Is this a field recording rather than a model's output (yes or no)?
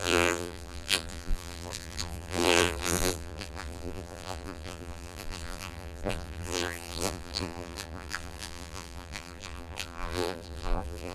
no